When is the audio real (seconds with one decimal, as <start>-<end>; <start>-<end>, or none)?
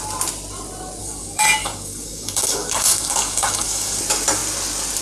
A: 0.0-1.0; 4.0-5.0